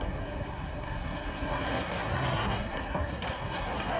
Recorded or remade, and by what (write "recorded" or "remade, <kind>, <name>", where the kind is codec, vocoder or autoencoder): remade, codec, SNAC